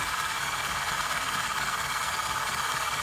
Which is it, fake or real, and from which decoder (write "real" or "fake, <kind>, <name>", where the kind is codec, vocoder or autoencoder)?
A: fake, codec, SNAC